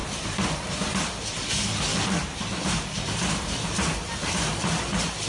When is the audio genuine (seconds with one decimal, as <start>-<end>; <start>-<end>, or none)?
1.0-1.9